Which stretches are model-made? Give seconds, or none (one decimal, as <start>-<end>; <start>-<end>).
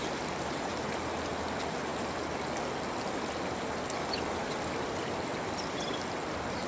none